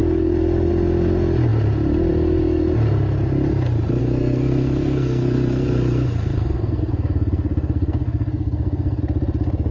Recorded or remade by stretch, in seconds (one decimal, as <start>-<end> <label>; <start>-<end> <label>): 0.0-4.0 recorded; 4.0-9.0 remade; 9.0-9.7 recorded